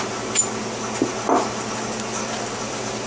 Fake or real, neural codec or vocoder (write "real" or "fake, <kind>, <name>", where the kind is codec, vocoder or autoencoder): real